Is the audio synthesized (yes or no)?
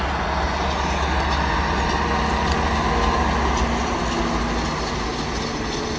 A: no